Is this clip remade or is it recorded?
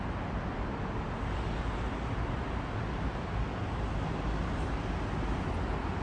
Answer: recorded